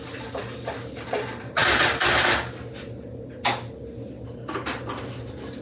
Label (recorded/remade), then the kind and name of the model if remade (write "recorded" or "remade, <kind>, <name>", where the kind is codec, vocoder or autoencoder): recorded